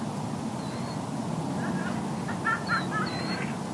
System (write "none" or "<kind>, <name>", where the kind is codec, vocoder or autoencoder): none